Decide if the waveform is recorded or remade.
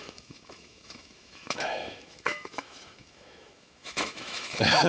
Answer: remade